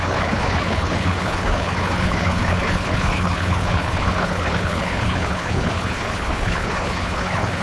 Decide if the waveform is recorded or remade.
remade